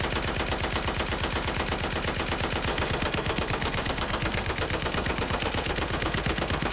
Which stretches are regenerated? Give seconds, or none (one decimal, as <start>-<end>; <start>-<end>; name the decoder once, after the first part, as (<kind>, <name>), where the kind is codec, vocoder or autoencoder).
2.7-6.7 (codec, SNAC)